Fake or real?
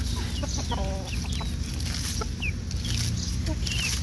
real